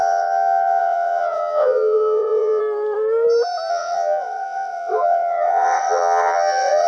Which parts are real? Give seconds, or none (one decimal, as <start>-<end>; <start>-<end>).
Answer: 2.6-3.7